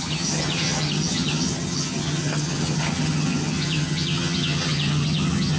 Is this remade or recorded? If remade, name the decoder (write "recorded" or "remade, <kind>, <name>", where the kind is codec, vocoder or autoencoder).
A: remade, vocoder, HiFi-GAN